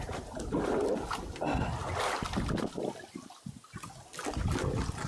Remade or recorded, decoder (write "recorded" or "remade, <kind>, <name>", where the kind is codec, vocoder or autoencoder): recorded